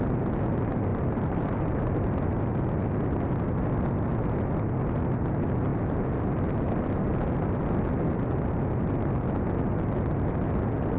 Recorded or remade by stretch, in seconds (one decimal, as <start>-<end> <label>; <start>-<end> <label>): 0.0-0.9 recorded; 0.9-2.4 remade; 2.4-11.0 recorded